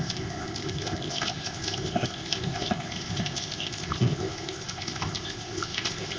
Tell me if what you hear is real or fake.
fake